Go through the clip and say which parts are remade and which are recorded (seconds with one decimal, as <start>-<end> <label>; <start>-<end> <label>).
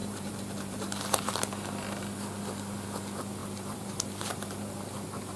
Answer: 0.0-1.4 remade; 1.4-3.4 recorded; 3.4-4.7 remade; 4.7-5.4 recorded